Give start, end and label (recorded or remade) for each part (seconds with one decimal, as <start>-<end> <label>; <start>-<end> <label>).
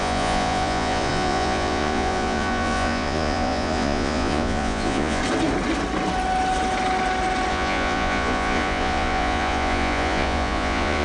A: 0.0-5.2 remade; 5.2-7.5 recorded; 7.5-11.0 remade